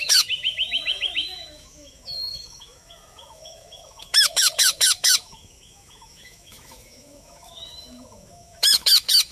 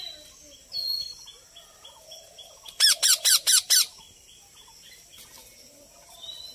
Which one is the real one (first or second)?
second